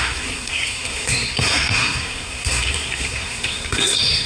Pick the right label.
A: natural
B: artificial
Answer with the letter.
B